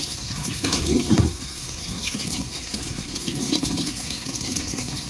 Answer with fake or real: fake